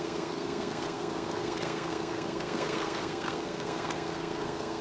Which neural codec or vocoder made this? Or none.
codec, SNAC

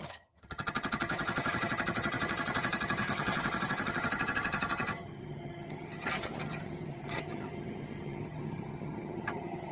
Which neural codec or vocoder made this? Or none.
vocoder, HiFi-GAN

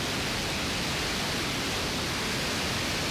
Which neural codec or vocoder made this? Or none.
none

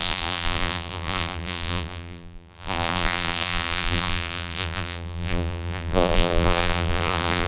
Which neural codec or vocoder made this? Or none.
vocoder, BigVGAN v2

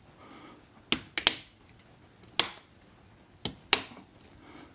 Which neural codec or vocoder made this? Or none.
none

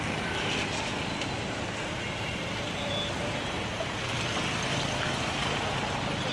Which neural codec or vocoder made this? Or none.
none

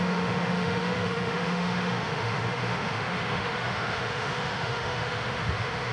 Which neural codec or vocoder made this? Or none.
autoencoder, DAC-VAE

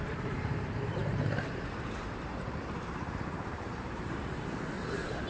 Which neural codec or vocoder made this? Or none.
vocoder, BigVGAN v2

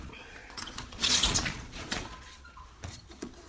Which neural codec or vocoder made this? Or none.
vocoder, Vocos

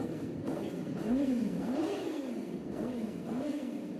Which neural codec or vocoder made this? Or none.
codec, SNAC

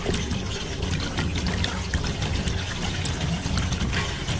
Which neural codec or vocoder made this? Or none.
none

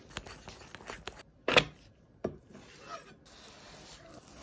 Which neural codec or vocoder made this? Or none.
none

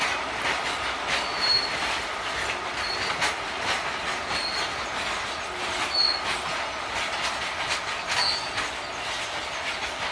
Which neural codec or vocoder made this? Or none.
none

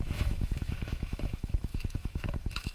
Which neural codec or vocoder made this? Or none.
autoencoder, DAC-VAE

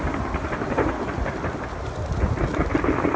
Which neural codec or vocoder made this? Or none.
none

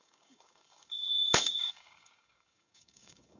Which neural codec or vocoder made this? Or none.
codec, DAC